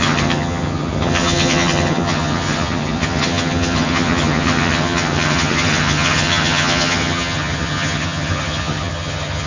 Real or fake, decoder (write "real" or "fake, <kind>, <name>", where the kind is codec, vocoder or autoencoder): fake, vocoder, HiFi-GAN